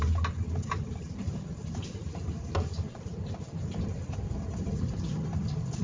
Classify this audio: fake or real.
real